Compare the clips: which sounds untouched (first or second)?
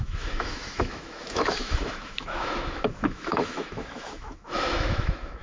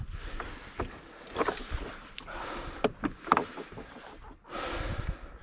second